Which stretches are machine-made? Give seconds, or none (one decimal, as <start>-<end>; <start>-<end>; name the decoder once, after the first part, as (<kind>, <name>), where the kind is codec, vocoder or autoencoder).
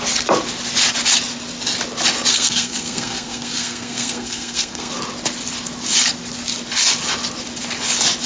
2.3-4.9 (codec, SNAC)